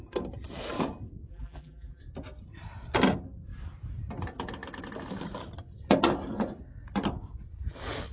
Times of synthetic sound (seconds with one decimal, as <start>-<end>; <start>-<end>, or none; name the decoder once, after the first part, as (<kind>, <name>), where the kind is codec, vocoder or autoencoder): 1.3-2.0 (vocoder, BigVGAN v2)